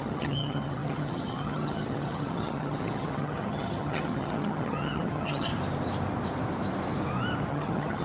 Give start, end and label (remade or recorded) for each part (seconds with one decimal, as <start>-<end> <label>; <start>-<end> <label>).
0.0-5.5 remade; 5.5-7.5 recorded; 7.5-8.0 remade